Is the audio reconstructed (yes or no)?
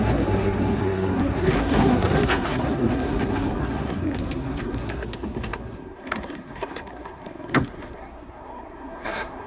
yes